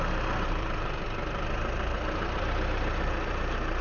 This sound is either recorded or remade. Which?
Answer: remade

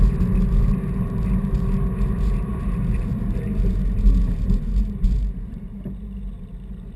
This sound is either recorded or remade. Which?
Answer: remade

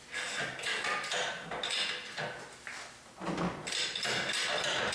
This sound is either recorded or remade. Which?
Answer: recorded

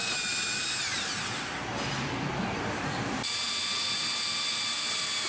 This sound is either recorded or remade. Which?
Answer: remade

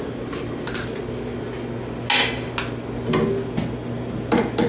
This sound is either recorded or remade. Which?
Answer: recorded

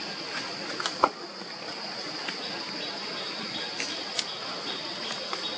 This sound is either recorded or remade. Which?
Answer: recorded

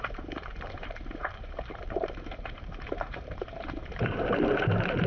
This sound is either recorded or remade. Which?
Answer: remade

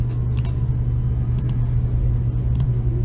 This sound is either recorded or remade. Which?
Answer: recorded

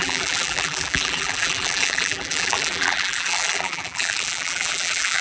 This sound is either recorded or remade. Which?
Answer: remade